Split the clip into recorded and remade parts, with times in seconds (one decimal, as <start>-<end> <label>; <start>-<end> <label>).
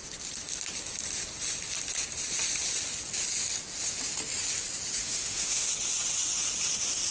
0.0-5.0 recorded; 5.0-5.7 remade; 5.7-7.1 recorded